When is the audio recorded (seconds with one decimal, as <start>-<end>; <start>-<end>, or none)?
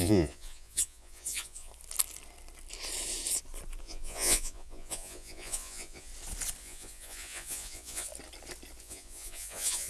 1.7-3.8; 6.1-6.6; 8.1-8.8